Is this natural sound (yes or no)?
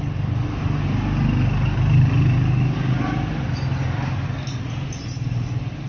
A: yes